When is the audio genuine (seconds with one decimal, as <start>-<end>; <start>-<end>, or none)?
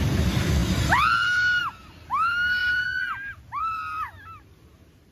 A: 0.0-2.6; 4.4-5.1